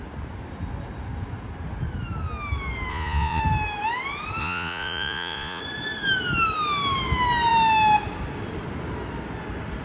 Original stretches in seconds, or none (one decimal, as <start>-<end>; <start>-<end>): 0.0-2.9; 3.4-4.4; 5.6-9.8